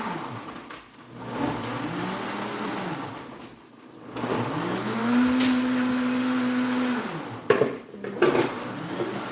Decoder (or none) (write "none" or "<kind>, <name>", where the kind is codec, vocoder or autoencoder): none